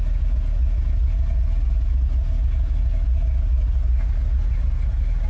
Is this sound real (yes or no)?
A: yes